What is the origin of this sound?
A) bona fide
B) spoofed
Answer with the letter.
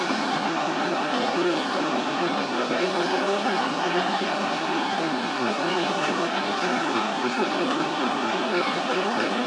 B